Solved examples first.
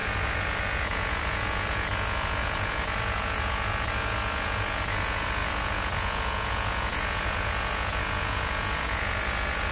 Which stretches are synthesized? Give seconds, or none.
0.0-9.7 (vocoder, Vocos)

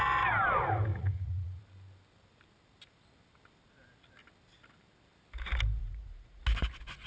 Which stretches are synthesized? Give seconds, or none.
0.9-1.6 (vocoder, Vocos); 5.8-6.4

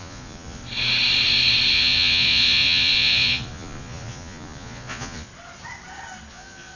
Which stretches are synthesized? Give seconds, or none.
0.0-0.6 (vocoder, Vocos); 1.7-5.3; 6.3-6.8

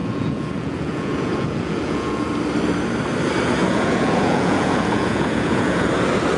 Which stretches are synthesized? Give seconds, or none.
0.0-2.2 (vocoder, Vocos); 3.6-5.9

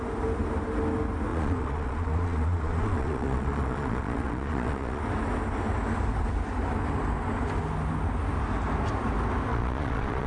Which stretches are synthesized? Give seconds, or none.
1.3-5.0 (vocoder, Vocos); 9.5-10.3

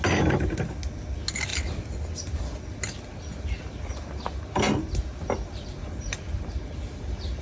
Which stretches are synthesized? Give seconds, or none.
none

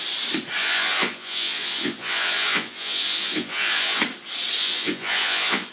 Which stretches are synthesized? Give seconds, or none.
0.6-4.0 (vocoder, Vocos); 4.6-5.7

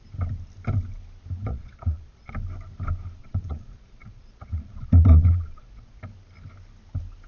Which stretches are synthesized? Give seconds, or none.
1.5-2.3 (vocoder, Vocos); 3.2-6.0